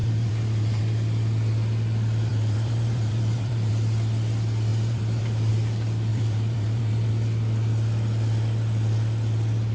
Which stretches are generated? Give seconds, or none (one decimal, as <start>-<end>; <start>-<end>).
0.0-0.8; 2.3-3.7; 4.7-5.5; 6.1-7.1